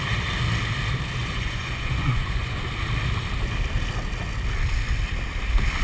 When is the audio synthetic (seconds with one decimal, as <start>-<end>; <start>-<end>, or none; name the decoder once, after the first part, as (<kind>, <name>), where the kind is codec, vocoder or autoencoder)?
1.2-2.6 (vocoder, Vocos)

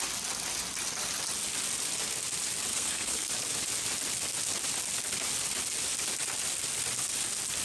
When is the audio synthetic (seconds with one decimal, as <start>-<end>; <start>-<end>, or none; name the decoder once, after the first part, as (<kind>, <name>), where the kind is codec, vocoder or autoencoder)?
2.7-3.3 (codec, SNAC)

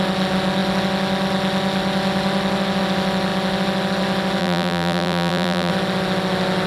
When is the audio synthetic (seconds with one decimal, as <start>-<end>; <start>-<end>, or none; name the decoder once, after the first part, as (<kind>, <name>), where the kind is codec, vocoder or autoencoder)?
4.4-5.7 (vocoder, BigVGAN v2)

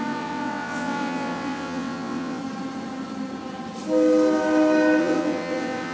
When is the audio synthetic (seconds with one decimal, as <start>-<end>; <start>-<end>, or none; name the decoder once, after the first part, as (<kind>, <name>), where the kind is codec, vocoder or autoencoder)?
0.0-2.4 (vocoder, WaveNeXt); 5.0-5.9

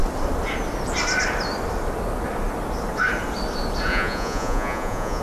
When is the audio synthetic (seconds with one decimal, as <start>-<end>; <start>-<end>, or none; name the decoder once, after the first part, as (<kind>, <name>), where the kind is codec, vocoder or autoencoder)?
3.9-5.2 (vocoder, Vocos)

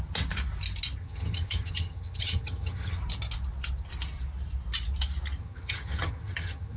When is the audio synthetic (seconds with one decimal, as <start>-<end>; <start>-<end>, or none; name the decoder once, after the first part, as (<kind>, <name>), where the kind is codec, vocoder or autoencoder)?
1.0-3.0 (vocoder, HiFi-GAN); 5.4-6.8